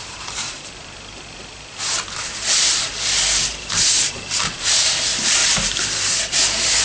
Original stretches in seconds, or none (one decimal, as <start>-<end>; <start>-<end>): 5.4-6.2